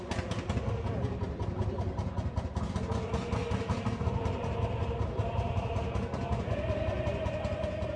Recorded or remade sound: recorded